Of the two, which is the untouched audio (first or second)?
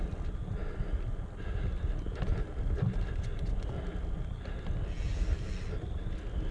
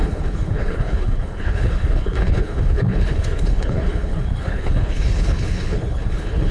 first